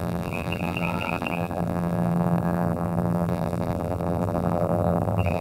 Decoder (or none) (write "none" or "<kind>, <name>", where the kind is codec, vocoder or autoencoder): vocoder, BigVGAN v2